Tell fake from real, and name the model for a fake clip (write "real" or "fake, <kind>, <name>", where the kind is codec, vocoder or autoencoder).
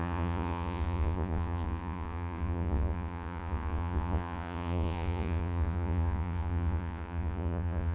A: fake, vocoder, Vocos